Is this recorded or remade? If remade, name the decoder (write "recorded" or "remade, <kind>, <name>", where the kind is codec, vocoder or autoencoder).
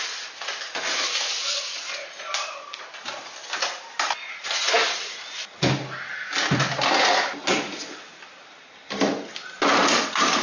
recorded